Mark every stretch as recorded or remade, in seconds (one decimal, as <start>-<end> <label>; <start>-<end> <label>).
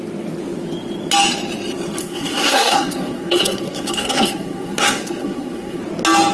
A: 0.0-2.0 recorded; 2.0-5.8 remade; 5.8-6.3 recorded